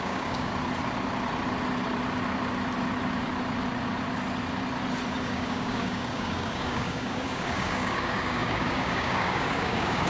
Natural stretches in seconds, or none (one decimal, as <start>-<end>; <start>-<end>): 0.5-5.2